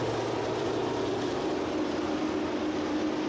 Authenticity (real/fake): real